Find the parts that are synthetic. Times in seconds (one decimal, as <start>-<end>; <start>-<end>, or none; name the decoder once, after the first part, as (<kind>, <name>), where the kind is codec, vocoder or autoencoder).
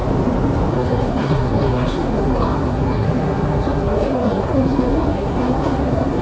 0.7-6.2 (codec, SNAC)